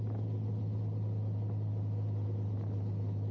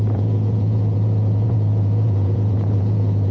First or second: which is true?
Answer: first